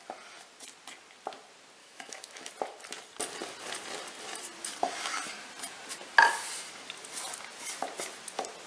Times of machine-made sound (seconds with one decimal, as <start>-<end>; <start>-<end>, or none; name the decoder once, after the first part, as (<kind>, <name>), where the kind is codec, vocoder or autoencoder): 1.8-2.5 (autoencoder, DAC-VAE)